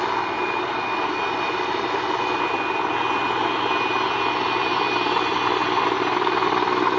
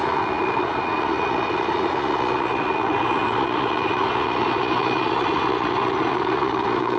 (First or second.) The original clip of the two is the first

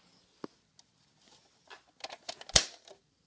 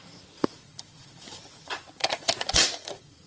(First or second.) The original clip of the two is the first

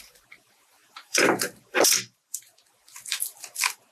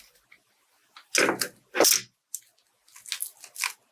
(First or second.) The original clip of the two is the second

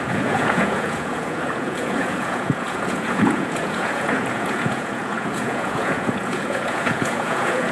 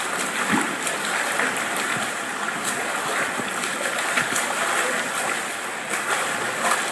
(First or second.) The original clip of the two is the second